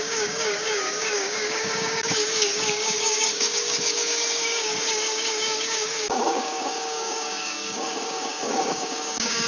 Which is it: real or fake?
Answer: fake